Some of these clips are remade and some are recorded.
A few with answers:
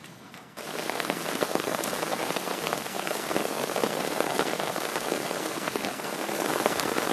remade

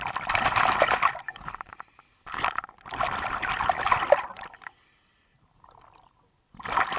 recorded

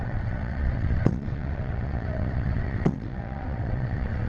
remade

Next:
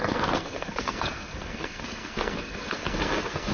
remade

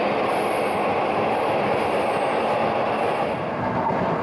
recorded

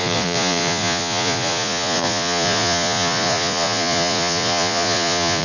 remade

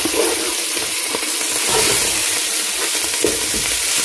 recorded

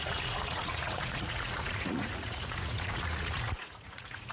remade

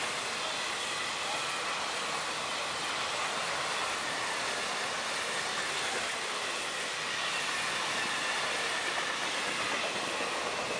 recorded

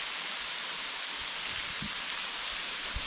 recorded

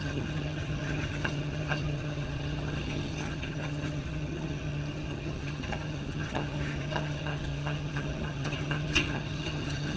remade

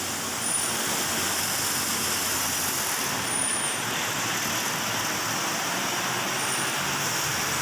recorded